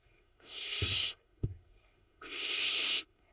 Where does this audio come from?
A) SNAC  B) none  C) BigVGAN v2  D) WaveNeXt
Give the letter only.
A